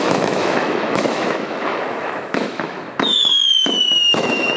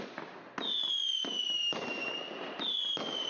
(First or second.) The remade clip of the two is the first